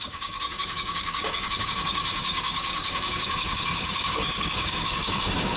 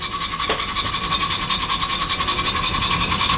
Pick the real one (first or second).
second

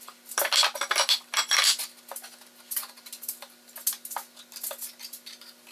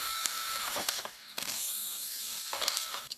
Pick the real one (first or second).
first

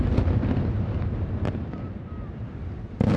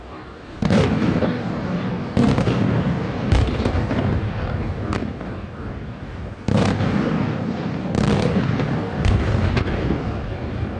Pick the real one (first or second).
first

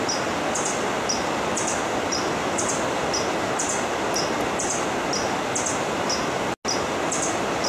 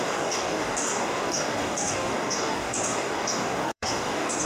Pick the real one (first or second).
first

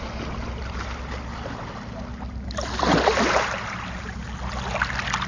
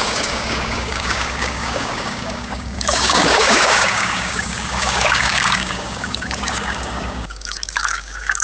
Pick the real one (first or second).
first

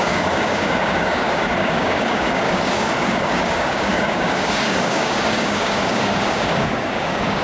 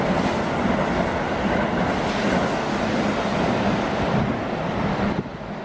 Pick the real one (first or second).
second